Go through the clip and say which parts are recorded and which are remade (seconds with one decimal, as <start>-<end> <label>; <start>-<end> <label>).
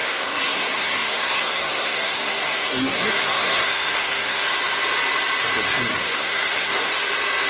0.0-4.4 remade; 4.4-5.9 recorded; 5.9-6.9 remade; 6.9-7.5 recorded